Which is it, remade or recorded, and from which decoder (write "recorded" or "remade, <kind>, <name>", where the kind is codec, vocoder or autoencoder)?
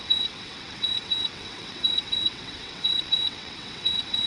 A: remade, vocoder, WaveNeXt